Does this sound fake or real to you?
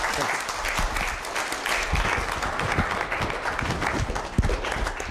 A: real